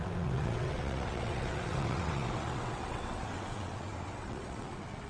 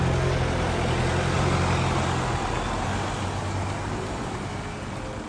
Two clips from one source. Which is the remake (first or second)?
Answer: first